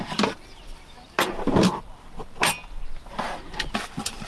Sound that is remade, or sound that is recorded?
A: recorded